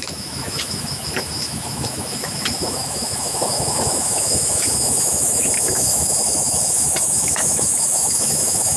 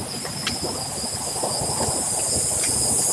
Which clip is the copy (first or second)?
first